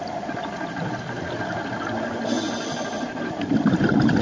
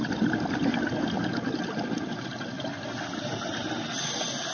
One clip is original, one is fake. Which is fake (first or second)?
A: first